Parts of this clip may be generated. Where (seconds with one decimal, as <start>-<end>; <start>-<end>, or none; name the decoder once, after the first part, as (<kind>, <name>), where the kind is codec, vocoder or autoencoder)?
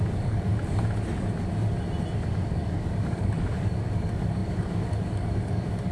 0.0-0.5 (codec, DAC); 2.3-5.9